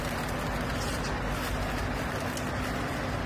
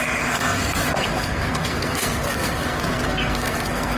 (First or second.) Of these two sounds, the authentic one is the first